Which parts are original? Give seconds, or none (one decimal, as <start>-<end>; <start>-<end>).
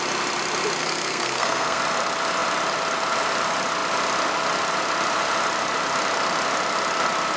0.0-0.8; 1.8-7.4